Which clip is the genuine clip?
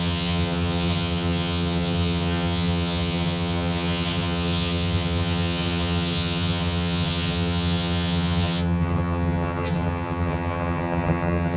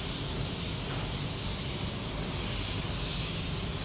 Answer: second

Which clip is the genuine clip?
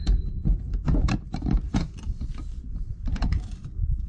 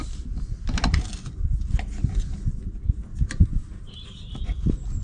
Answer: second